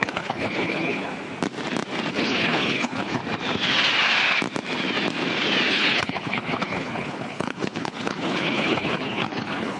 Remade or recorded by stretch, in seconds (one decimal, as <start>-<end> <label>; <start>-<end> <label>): 0.0-1.1 remade; 1.1-2.1 recorded; 2.1-3.2 remade; 3.2-5.7 recorded; 5.7-9.8 remade